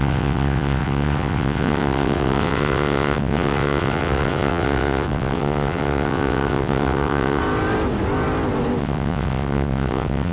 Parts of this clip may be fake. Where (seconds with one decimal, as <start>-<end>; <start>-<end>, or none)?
0.0-7.4; 8.8-10.3